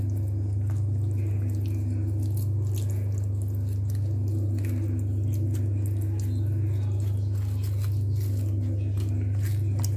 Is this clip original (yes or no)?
yes